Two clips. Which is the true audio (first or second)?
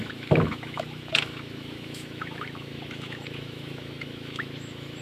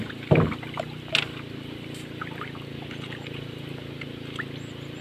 second